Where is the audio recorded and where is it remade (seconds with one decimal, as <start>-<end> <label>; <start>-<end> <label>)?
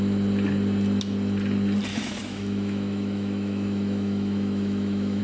0.0-1.9 recorded; 1.9-5.2 remade